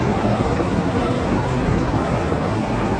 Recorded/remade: remade